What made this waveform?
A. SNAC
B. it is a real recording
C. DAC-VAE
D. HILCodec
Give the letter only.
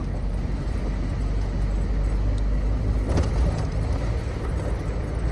B